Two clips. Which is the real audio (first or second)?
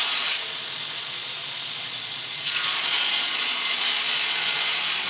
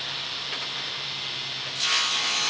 second